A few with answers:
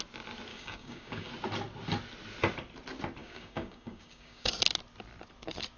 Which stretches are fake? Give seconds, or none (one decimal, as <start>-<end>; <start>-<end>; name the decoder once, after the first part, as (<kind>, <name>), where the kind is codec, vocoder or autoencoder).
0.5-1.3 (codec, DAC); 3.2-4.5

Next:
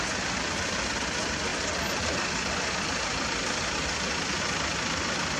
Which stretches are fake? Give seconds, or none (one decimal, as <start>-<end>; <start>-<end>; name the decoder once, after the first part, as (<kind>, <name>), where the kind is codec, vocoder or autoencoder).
none

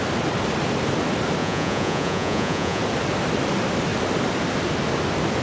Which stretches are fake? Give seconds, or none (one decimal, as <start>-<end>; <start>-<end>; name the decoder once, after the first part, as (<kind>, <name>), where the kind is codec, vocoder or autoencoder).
1.4-2.8 (vocoder, Vocos)

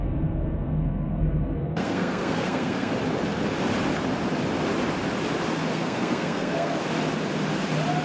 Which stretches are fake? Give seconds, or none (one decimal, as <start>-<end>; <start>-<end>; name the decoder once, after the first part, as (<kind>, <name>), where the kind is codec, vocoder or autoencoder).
0.0-2.9 (codec, SNAC); 5.7-6.8

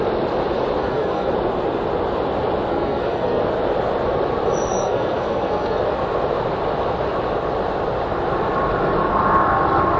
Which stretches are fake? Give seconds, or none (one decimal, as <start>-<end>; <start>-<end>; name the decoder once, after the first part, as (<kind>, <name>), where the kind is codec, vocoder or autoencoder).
0.8-1.3 (codec, SNAC); 2.7-3.4; 4.7-5.8

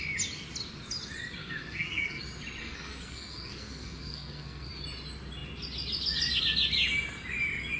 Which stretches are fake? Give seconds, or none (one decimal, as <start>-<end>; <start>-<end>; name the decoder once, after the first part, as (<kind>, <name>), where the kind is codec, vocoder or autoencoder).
1.4-2.2 (codec, SNAC); 2.6-4.7

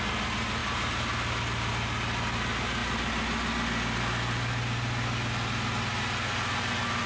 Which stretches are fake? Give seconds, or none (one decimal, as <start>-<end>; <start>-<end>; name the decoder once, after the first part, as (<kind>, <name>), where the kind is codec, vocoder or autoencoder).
none

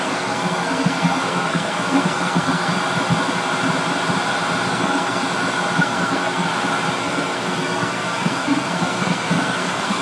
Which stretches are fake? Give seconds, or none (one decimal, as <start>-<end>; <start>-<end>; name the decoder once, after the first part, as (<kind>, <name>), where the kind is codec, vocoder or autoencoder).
0.0-2.7 (codec, SNAC); 4.7-5.2; 5.8-6.5; 7.0-10.0